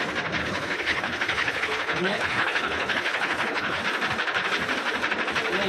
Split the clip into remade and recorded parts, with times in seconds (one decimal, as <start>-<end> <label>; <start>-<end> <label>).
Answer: 0.0-0.4 recorded; 0.4-3.8 remade; 3.8-5.7 recorded